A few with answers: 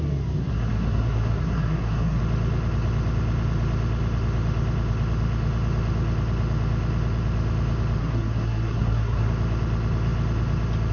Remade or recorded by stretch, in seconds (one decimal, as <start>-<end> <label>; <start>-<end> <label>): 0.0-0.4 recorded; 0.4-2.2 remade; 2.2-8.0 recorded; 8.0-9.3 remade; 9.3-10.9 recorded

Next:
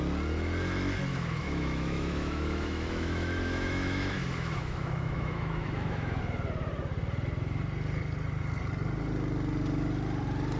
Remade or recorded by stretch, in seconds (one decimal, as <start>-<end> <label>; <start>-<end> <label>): 0.0-1.1 recorded; 1.1-6.2 remade; 6.2-10.6 recorded

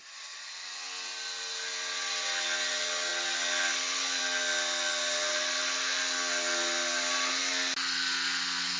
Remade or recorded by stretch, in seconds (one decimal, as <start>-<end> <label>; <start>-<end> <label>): 0.0-8.8 recorded

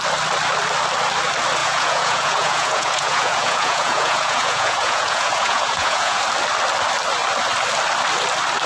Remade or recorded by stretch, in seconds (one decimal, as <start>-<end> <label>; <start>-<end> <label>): 0.0-1.6 recorded; 1.6-6.2 remade; 6.2-8.7 recorded